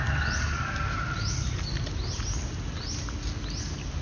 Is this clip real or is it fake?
real